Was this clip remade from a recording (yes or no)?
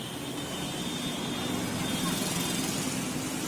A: no